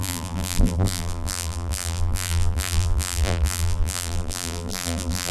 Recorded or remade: remade